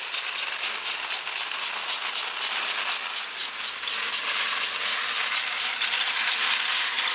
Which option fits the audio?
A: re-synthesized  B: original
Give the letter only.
B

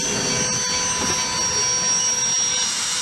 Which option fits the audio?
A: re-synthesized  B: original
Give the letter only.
B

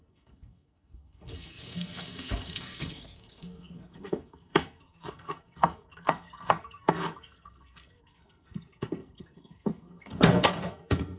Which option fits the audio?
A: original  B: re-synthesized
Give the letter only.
B